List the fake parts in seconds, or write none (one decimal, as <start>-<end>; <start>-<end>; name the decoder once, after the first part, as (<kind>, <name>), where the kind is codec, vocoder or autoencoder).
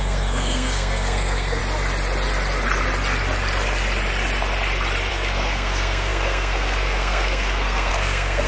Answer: 0.0-1.6 (codec, SNAC); 5.1-8.5